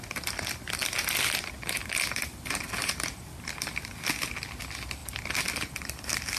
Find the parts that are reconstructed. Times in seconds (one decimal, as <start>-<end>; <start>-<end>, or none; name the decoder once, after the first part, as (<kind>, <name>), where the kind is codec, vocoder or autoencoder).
none